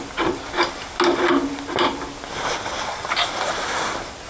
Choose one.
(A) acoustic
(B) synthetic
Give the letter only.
A